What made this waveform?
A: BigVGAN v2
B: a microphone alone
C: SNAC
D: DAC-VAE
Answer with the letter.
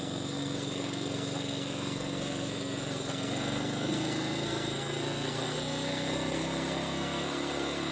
C